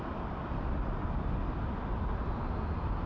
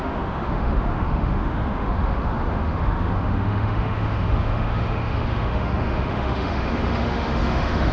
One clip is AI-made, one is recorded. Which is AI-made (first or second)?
second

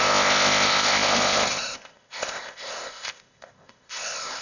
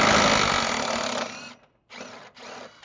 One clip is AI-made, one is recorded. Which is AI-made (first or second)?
first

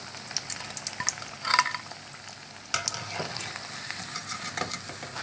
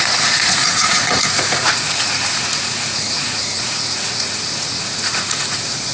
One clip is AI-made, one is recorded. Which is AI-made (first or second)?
second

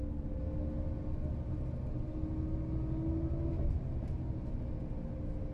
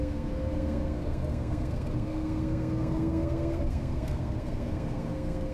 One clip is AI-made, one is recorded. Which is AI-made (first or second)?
second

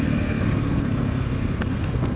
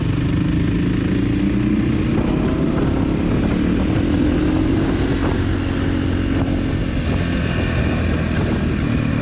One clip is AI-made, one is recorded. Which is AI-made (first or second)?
first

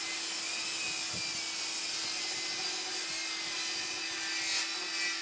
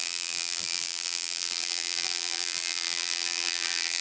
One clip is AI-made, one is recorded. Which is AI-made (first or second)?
second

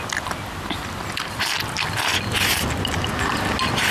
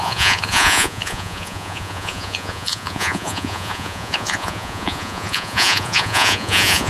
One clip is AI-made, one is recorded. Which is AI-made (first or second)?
second